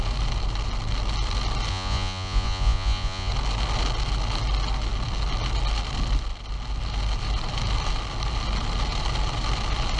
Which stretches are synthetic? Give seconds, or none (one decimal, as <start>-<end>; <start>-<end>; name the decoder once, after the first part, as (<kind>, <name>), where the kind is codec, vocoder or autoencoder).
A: 1.7-3.3 (vocoder, Vocos)